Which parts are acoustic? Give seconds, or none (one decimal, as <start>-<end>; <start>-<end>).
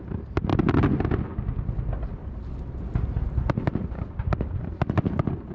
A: 0.0-5.5